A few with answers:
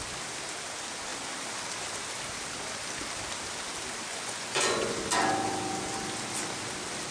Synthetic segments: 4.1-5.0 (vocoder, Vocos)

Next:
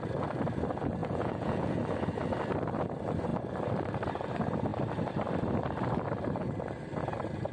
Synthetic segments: 1.0-1.8 (vocoder, Vocos)

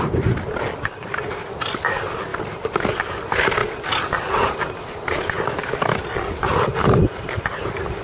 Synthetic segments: none

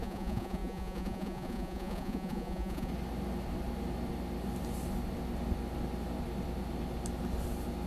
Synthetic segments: 0.0-2.9 (vocoder, Vocos)

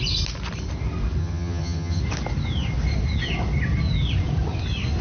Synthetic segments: 1.2-2.0 (vocoder, HiFi-GAN)